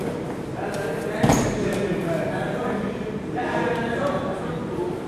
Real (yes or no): yes